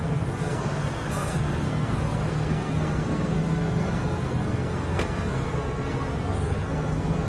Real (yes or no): no